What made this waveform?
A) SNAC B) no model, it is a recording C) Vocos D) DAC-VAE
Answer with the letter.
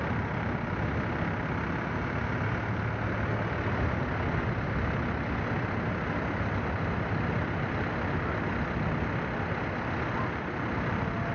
B